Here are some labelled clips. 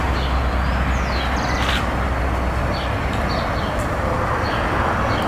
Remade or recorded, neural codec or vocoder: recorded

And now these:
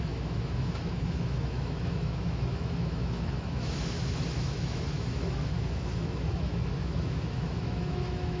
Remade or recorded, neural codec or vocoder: remade, autoencoder, DAC-VAE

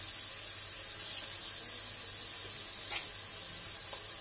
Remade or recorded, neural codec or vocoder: recorded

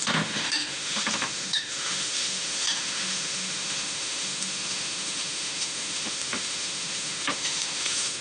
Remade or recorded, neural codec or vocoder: remade, autoencoder, DAC-VAE